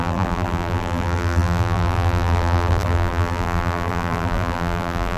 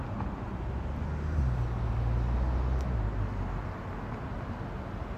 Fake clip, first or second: first